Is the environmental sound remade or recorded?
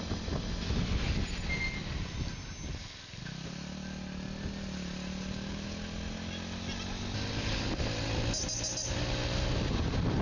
recorded